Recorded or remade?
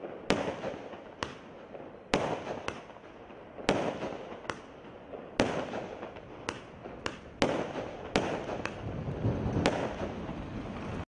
recorded